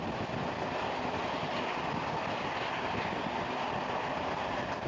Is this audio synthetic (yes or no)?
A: no